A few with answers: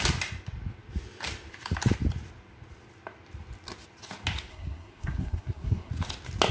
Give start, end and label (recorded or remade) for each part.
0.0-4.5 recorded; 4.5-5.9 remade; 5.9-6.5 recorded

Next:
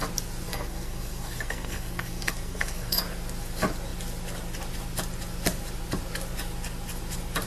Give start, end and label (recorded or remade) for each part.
0.0-0.5 recorded; 0.5-3.0 remade; 3.0-7.5 recorded

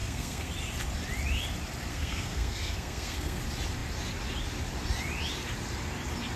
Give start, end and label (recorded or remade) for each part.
0.0-0.5 remade; 0.5-1.9 recorded; 1.9-3.4 remade; 3.4-6.4 recorded

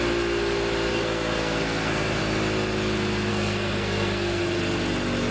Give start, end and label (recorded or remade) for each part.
0.0-0.9 recorded; 0.9-2.2 remade; 2.2-3.3 recorded; 3.3-4.4 remade; 4.4-5.3 recorded

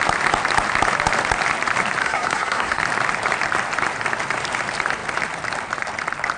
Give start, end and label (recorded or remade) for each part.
0.0-2.0 recorded; 2.0-2.8 remade; 2.8-6.4 recorded

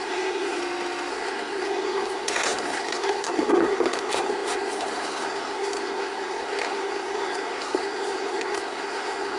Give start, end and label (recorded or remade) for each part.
0.0-0.6 remade; 0.6-1.1 recorded; 1.1-9.4 remade

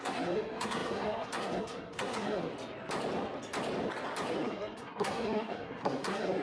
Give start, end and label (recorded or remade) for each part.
0.0-2.5 remade; 2.5-4.3 recorded; 4.3-6.4 remade